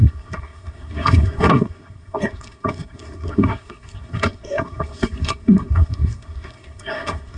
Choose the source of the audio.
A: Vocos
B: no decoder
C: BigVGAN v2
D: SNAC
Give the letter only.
D